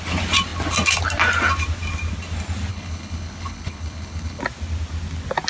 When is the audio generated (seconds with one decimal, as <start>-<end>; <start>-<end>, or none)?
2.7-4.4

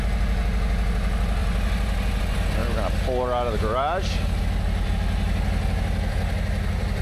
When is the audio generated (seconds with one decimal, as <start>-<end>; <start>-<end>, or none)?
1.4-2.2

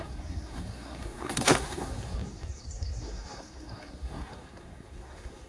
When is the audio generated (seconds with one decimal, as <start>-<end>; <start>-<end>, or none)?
0.0-5.5

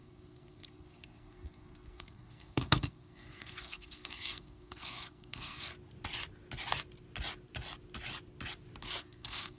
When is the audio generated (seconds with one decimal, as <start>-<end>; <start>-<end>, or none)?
0.0-5.7; 9.0-9.6